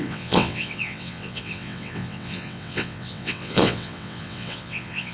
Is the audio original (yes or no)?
no